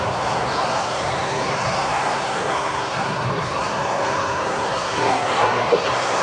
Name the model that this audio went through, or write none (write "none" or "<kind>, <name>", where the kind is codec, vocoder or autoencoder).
codec, SNAC